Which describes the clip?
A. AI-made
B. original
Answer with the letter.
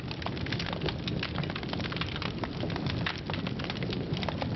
B